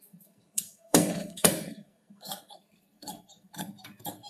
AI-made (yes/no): yes